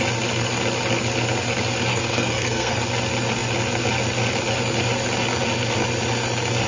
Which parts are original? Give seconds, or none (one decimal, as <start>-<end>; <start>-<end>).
0.0-1.9; 2.8-6.7